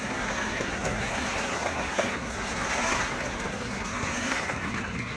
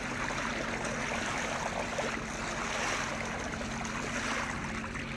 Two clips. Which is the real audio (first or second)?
second